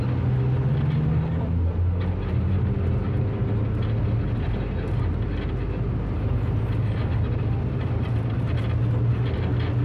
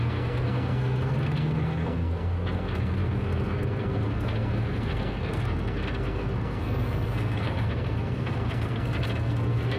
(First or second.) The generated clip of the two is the second